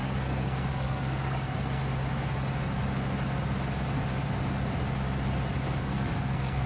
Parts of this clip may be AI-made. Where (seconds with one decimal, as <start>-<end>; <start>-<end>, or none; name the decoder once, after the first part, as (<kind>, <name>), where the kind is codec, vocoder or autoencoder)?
0.0-1.8 (codec, SNAC); 5.8-6.7